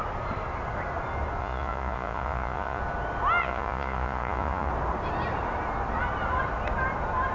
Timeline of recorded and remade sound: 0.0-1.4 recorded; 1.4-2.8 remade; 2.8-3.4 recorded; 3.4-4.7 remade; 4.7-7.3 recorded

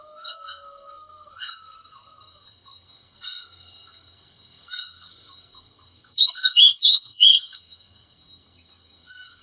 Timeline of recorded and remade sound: 0.0-9.4 remade

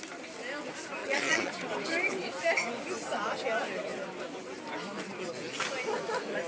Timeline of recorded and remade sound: 0.0-1.0 recorded; 1.0-1.5 remade; 1.5-6.5 recorded

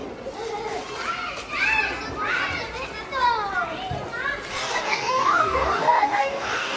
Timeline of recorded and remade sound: 0.0-4.5 recorded; 4.5-6.8 remade

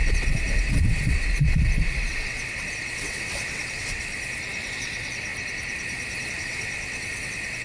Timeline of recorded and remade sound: 0.0-4.1 remade; 4.1-4.7 recorded; 4.7-5.3 remade; 5.3-6.3 recorded; 6.3-7.6 remade

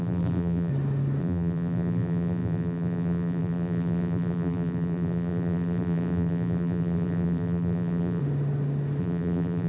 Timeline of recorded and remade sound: 0.0-0.7 remade; 0.7-1.2 recorded; 1.2-8.2 remade; 8.2-9.0 recorded; 9.0-9.7 remade

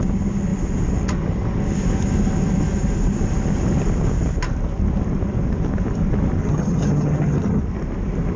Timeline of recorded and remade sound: 0.0-6.4 recorded; 6.4-7.6 remade; 7.6-8.4 recorded

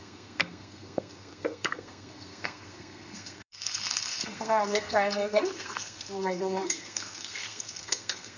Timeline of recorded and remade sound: 0.0-8.4 remade